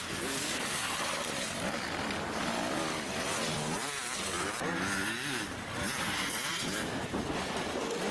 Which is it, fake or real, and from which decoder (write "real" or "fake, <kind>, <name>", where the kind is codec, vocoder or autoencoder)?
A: fake, vocoder, BigVGAN v2